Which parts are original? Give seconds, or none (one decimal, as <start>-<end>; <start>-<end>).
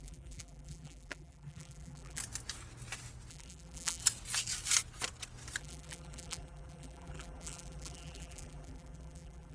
2.2-3.3; 4.0-5.6